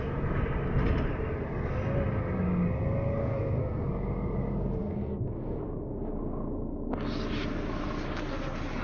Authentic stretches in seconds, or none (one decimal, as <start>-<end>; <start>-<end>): 0.0-3.2; 3.9-4.8; 5.6-8.8